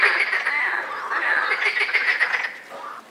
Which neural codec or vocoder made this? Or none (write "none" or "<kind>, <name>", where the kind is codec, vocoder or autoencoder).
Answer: none